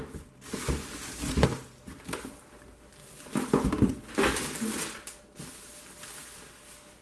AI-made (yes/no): no